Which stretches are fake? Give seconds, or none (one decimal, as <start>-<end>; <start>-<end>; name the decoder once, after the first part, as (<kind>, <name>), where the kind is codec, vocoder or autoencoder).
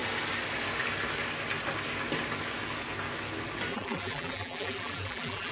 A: 3.7-5.5 (vocoder, BigVGAN v2)